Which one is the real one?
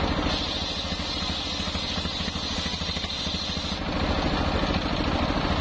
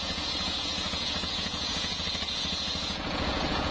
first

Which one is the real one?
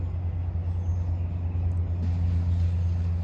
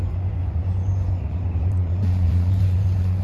first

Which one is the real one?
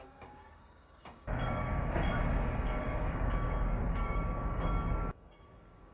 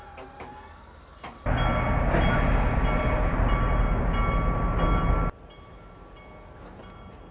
second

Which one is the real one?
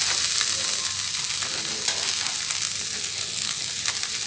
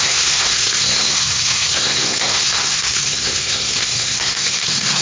first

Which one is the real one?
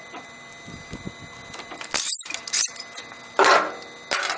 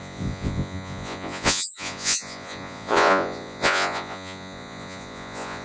first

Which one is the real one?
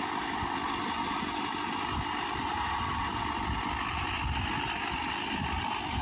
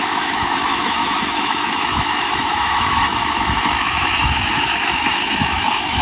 first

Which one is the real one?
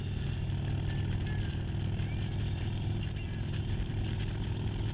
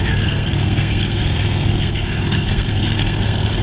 first